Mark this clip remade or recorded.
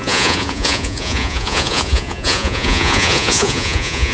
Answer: remade